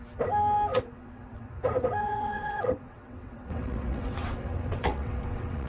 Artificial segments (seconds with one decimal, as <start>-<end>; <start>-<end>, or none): 0.7-1.5; 2.0-5.7